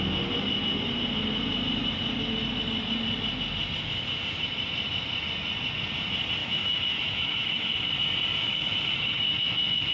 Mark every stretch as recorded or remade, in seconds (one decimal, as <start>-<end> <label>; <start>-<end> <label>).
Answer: 0.0-6.4 recorded; 6.4-7.9 remade; 7.9-8.4 recorded; 8.4-9.9 remade